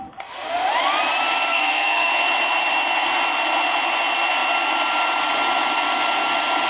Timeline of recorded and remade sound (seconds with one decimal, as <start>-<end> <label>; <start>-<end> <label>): 0.0-1.5 recorded; 1.5-2.1 remade; 2.1-6.7 recorded